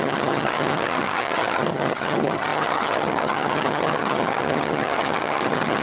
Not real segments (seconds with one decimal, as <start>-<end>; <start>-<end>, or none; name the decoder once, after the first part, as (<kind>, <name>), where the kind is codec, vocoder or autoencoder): 0.0-5.8 (vocoder, HiFi-GAN)